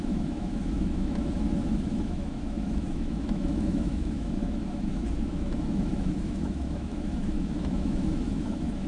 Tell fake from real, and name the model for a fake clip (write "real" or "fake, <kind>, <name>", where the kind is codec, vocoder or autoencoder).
fake, autoencoder, DAC-VAE